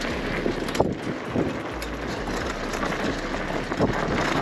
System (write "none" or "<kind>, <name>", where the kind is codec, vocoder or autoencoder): none